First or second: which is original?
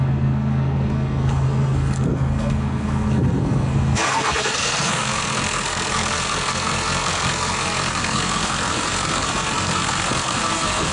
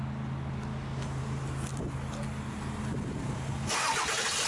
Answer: second